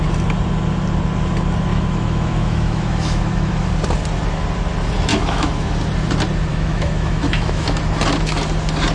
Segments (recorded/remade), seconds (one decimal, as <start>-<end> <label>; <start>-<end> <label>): 0.0-1.7 recorded; 1.7-3.7 remade; 3.7-5.1 recorded; 5.1-5.6 remade; 5.6-6.5 recorded; 6.5-7.8 remade; 7.8-8.9 recorded